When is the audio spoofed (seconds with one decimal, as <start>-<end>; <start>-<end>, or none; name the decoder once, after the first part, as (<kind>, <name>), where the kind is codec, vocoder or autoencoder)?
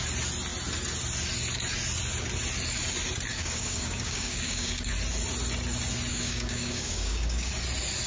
3.3-4.9 (codec, DAC); 6.1-7.5